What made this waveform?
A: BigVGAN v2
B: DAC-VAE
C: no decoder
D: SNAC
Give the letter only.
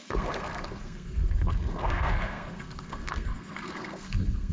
D